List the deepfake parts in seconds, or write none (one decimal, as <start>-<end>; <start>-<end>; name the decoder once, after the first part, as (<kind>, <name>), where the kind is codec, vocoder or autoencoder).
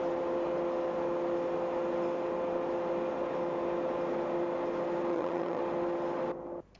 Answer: 5.1-5.6 (vocoder, HiFi-GAN)